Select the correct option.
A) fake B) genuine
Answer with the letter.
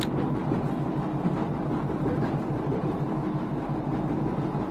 B